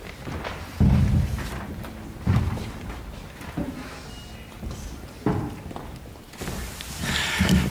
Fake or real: real